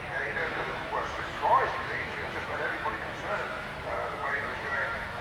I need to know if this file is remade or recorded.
remade